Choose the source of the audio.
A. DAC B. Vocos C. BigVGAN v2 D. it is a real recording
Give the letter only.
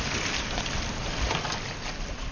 D